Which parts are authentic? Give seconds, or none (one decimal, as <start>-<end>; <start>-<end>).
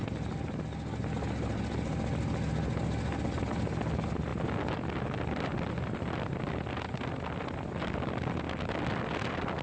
0.0-9.6